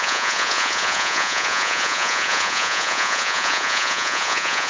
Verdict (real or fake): fake